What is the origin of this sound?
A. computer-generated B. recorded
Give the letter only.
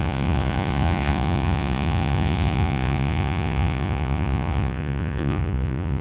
A